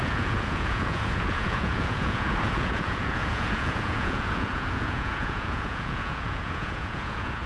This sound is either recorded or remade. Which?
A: remade